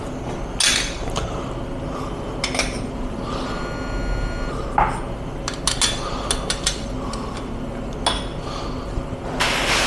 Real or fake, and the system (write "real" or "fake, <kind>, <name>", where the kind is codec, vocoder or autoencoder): real